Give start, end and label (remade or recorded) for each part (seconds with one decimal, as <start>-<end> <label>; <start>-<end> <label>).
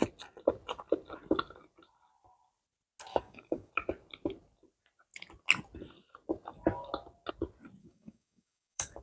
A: 0.0-3.1 recorded; 3.1-3.7 remade; 3.7-7.8 recorded; 7.8-9.0 remade